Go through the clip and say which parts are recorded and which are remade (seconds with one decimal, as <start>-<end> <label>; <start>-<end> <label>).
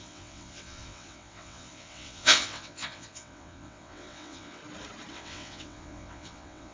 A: 0.0-4.6 remade; 4.6-5.1 recorded; 5.1-6.7 remade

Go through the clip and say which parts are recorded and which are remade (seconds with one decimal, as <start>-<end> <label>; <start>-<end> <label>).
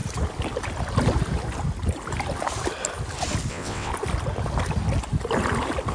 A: 0.0-3.5 recorded; 3.5-3.9 remade; 3.9-5.9 recorded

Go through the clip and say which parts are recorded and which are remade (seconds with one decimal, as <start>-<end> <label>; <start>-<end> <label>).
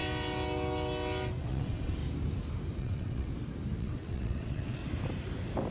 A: 0.0-1.4 recorded; 1.4-2.0 remade; 2.0-2.8 recorded; 2.8-3.3 remade; 3.3-3.8 recorded; 3.8-4.8 remade; 4.8-5.7 recorded